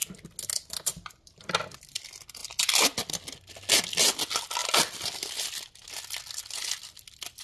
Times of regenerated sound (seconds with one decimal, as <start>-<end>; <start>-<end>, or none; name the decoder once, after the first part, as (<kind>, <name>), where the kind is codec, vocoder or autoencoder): none